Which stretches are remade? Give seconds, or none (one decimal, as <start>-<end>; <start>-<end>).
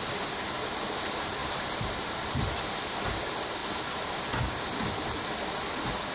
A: 1.4-2.6; 3.6-4.3